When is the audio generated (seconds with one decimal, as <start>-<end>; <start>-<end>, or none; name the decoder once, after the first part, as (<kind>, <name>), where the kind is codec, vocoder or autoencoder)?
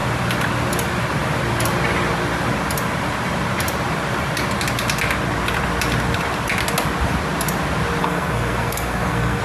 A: 8.0-9.4 (codec, SNAC)